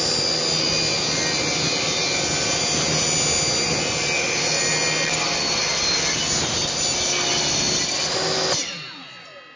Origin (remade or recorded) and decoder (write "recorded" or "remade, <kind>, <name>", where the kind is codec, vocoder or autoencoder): recorded